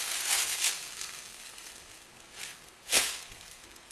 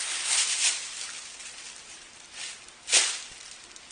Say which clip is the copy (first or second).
first